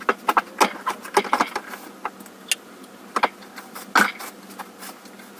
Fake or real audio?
real